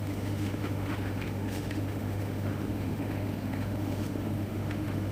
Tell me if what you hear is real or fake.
fake